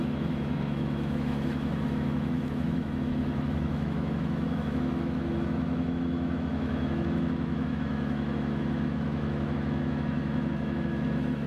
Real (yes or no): no